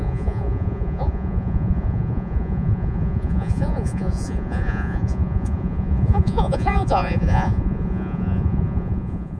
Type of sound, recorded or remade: remade